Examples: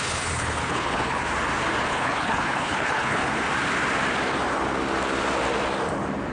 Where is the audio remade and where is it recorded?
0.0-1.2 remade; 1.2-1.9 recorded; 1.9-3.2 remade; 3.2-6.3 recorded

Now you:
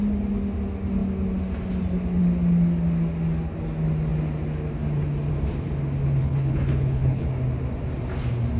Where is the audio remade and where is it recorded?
0.0-6.2 recorded; 6.2-7.3 remade; 7.3-8.6 recorded

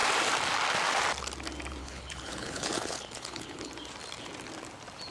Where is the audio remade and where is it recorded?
0.0-1.8 recorded; 1.8-3.7 remade; 3.7-5.1 recorded